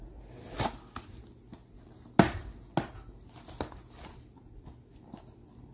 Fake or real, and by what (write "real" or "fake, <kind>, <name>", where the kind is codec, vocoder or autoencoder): real